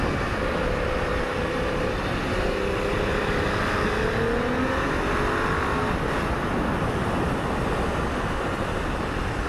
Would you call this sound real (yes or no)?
yes